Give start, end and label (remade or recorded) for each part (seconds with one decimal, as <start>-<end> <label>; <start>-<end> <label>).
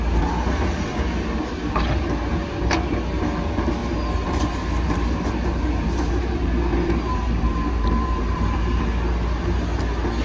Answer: 0.0-3.8 recorded; 3.8-8.8 remade; 8.8-10.2 recorded